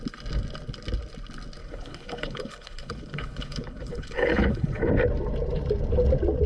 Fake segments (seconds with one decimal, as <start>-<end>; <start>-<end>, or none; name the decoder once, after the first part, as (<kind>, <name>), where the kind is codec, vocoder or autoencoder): 1.6-4.9 (codec, HILCodec)